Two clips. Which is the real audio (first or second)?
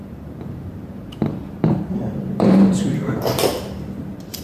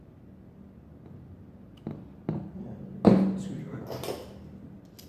second